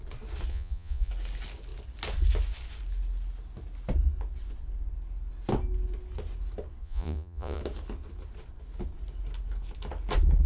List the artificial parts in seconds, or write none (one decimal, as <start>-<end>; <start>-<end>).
0.5-1.1; 6.8-7.6

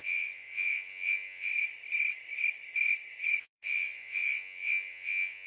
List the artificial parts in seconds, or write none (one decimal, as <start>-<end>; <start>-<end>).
0.0-1.5; 3.4-5.5

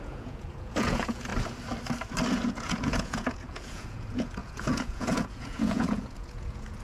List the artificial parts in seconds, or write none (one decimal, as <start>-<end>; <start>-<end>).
0.0-1.3; 2.3-6.8

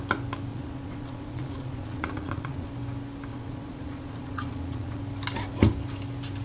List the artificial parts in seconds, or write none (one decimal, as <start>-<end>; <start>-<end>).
0.5-2.7; 3.3-5.0